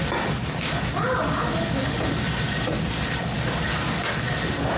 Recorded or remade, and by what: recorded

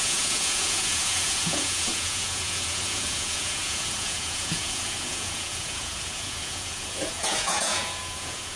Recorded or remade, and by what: remade, vocoder, Vocos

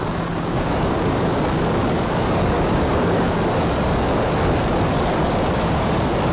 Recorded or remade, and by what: remade, codec, DAC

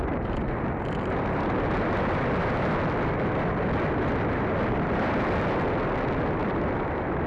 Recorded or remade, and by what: recorded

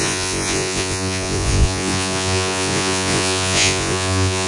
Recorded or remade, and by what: remade, vocoder, Vocos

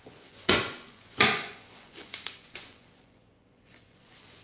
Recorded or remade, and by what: remade, vocoder, Vocos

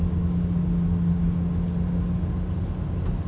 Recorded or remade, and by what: recorded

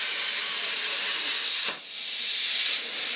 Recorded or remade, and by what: recorded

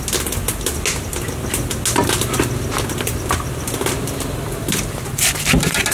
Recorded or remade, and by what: recorded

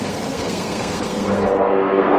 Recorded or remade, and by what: remade, codec, SNAC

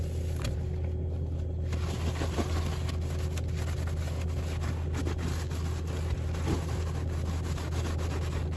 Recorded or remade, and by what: recorded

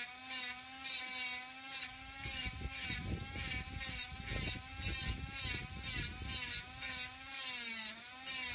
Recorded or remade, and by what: recorded